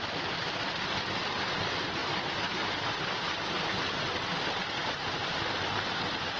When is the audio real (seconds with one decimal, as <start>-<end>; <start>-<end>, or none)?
0.0-4.8